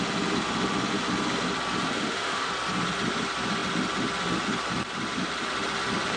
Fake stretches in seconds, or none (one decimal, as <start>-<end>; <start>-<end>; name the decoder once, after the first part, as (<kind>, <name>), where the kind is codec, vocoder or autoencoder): 1.8-2.5 (autoencoder, DAC-VAE)